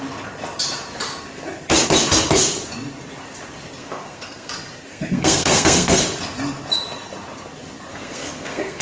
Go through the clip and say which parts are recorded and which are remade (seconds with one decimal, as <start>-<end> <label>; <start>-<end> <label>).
0.0-3.8 recorded; 3.8-4.5 remade; 4.5-4.9 recorded; 4.9-6.0 remade; 6.0-7.9 recorded; 7.9-8.8 remade